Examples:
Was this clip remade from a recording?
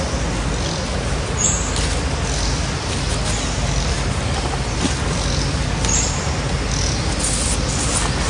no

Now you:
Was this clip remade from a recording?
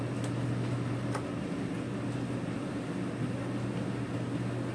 no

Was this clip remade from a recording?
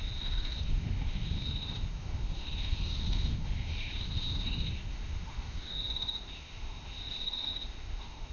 yes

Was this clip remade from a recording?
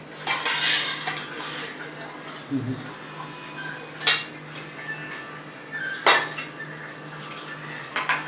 no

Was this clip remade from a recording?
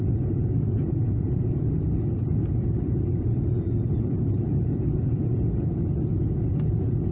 yes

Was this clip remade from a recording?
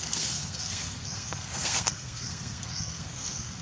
yes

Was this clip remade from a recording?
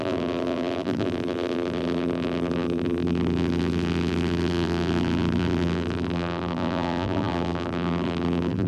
yes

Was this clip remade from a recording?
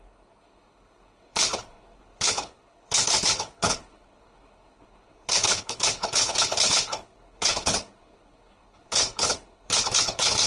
yes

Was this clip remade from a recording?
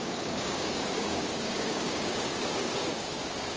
yes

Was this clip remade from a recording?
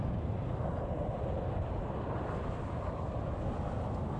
no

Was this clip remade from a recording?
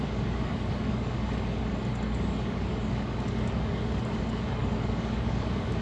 yes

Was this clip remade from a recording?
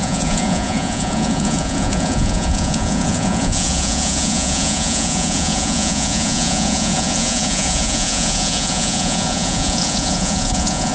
yes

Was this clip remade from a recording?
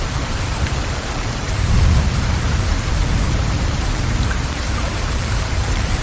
yes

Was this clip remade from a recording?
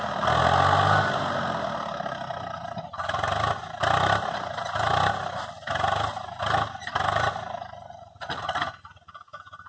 no